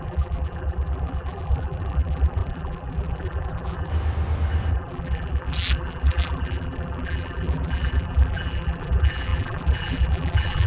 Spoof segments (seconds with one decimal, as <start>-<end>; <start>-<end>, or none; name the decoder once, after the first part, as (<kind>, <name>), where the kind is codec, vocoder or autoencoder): 0.0-3.9 (vocoder, BigVGAN v2); 4.7-10.7